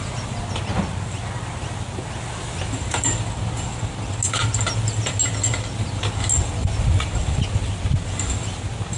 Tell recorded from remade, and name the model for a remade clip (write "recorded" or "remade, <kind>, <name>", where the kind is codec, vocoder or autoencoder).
recorded